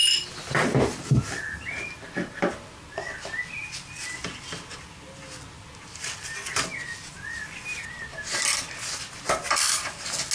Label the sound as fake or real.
real